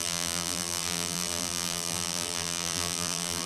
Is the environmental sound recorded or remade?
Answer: remade